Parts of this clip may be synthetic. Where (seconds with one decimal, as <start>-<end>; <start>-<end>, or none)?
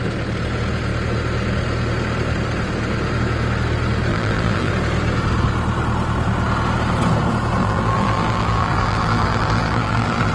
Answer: 4.1-4.7; 7.6-10.3